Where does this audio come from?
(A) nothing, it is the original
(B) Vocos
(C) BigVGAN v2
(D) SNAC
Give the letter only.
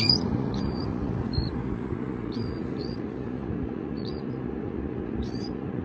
B